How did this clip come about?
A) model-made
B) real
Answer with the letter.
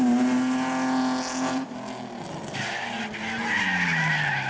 B